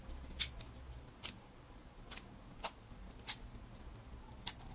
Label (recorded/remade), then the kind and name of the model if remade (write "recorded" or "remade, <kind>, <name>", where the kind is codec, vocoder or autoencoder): recorded